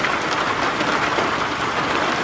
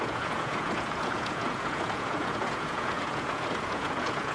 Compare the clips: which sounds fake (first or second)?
second